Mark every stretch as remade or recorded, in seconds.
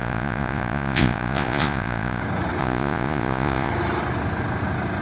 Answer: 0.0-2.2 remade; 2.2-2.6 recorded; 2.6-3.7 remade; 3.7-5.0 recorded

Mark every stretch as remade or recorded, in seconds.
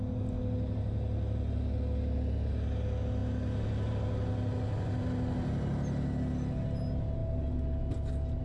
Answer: 0.0-8.4 recorded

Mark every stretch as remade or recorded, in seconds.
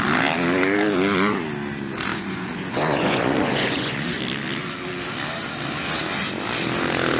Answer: 0.0-2.1 recorded; 2.1-4.2 remade; 4.2-7.2 recorded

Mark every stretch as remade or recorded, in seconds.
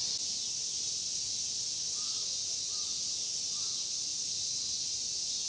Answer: 0.0-5.5 recorded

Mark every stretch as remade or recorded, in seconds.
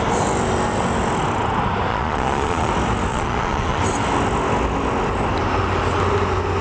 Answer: 0.0-1.9 recorded; 1.9-2.7 remade; 2.7-3.1 recorded; 3.1-3.8 remade; 3.8-6.6 recorded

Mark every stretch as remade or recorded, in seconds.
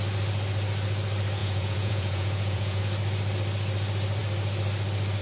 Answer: 0.0-1.4 recorded; 1.4-2.8 remade; 2.8-5.2 recorded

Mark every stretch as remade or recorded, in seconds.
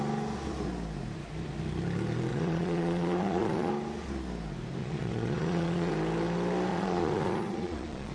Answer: 0.0-2.3 recorded; 2.3-3.7 remade; 3.7-4.8 recorded; 4.8-5.9 remade; 5.9-6.7 recorded; 6.7-8.1 remade